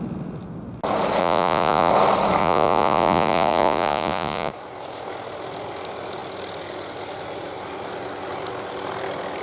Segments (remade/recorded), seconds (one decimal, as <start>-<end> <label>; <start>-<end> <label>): 0.0-1.2 recorded; 1.2-1.9 remade; 1.9-2.4 recorded; 2.4-4.5 remade; 4.5-9.4 recorded